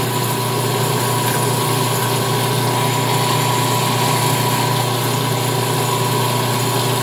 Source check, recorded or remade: recorded